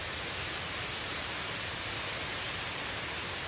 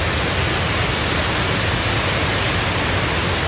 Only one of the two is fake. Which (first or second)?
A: first